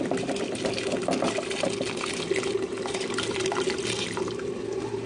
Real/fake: real